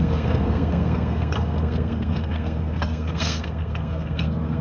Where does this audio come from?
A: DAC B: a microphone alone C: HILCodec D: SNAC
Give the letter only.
D